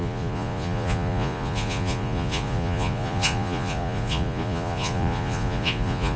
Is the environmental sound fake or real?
fake